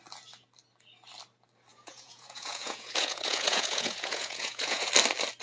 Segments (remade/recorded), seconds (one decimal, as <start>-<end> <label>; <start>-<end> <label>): 0.0-1.7 recorded; 1.7-4.9 remade; 4.9-5.4 recorded